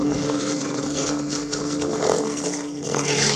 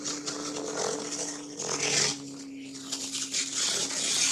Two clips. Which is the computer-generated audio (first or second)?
first